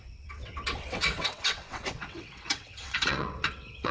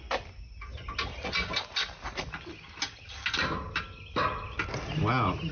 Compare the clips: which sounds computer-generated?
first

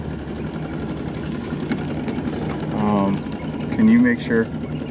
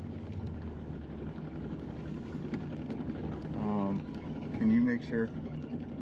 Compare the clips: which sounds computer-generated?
second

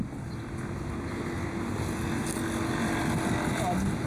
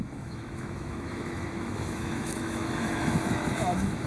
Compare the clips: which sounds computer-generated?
second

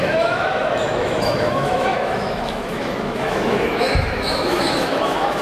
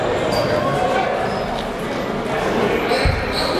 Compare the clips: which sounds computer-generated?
first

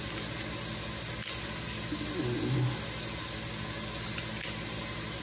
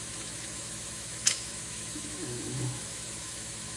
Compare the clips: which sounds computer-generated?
second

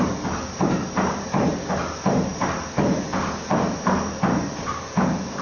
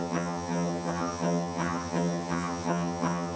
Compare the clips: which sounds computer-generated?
second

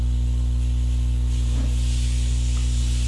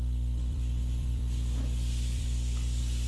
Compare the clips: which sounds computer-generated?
second